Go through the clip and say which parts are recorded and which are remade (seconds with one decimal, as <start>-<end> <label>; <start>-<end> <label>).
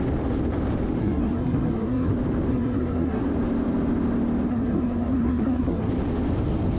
0.0-1.0 recorded; 1.0-2.1 remade; 2.1-2.5 recorded; 2.5-3.2 remade; 3.2-4.5 recorded; 4.5-5.9 remade; 5.9-6.8 recorded